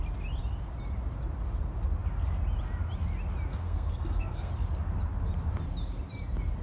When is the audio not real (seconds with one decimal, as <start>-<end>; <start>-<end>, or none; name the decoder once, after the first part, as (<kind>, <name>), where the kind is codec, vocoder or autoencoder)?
3.5-4.5 (codec, SNAC)